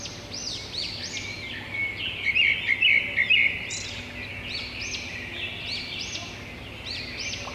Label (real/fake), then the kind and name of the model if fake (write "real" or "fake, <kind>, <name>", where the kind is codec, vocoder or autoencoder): real